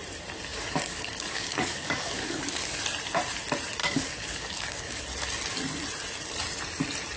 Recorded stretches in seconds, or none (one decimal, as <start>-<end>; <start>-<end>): 0.0-0.5; 2.8-3.8; 5.0-7.2